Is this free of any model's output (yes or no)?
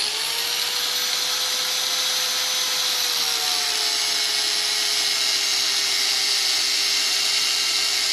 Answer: yes